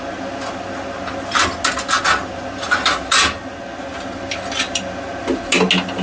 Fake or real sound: real